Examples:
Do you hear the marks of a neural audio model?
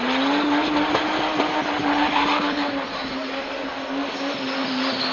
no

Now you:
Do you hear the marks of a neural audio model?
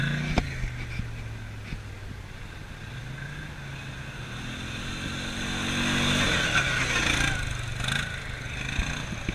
no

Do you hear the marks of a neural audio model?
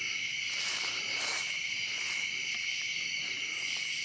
no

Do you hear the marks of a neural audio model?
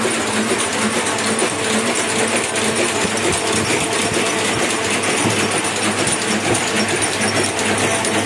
no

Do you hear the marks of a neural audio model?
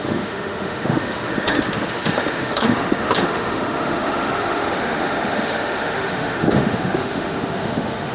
yes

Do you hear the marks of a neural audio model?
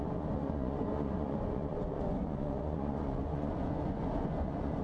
yes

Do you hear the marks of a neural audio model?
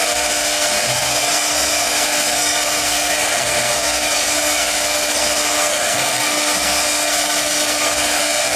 yes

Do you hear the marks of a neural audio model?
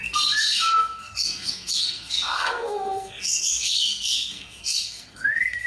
yes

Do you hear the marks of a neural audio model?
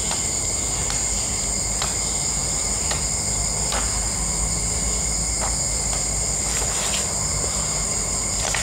no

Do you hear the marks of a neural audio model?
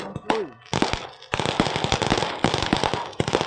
no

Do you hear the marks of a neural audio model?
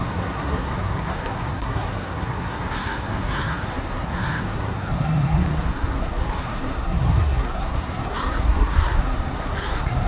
yes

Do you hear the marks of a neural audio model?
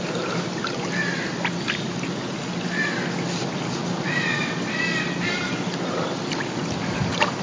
no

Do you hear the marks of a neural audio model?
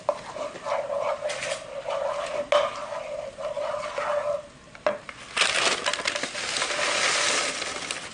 no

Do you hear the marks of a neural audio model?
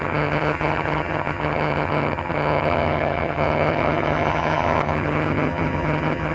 yes